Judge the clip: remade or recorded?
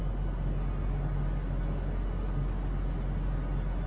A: recorded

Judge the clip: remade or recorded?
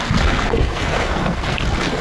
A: remade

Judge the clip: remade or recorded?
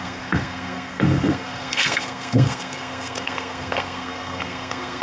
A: remade